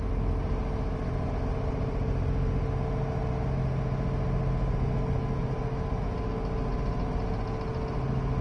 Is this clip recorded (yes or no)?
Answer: yes